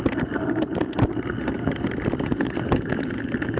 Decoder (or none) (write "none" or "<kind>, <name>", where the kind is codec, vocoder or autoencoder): none